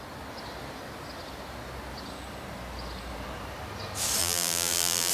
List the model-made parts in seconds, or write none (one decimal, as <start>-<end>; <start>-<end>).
4.2-5.1